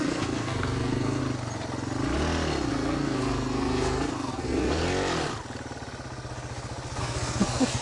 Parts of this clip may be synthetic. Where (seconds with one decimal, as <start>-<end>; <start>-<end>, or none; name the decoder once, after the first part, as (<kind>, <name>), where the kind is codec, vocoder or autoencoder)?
0.0-1.2 (codec, SNAC); 2.7-4.8; 7.0-7.8